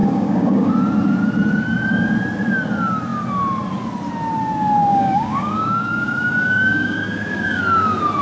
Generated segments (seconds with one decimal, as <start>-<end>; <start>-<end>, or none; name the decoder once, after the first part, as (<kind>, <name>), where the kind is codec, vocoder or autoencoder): 0.0-0.7 (codec, DAC); 4.9-7.6